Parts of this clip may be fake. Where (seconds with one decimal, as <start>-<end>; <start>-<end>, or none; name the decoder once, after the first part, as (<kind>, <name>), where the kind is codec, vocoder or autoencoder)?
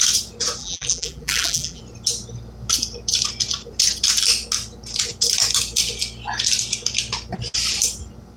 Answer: 0.6-1.8 (vocoder, BigVGAN v2)